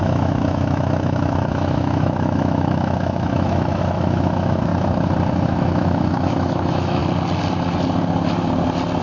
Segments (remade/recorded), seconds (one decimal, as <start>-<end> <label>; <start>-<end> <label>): 0.0-4.7 remade; 4.7-5.5 recorded; 5.5-7.0 remade; 7.0-9.0 recorded